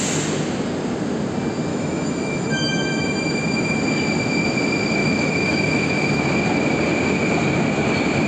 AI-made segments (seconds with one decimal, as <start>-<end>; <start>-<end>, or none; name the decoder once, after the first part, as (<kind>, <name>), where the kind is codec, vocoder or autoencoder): 1.7-3.8 (autoencoder, DAC-VAE); 5.0-6.2